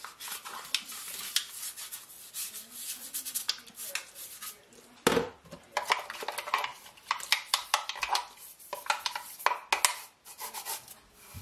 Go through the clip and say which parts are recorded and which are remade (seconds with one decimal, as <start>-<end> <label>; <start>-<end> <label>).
0.0-6.7 recorded; 6.7-8.0 remade; 8.0-11.4 recorded